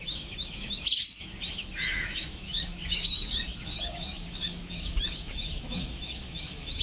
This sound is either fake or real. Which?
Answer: fake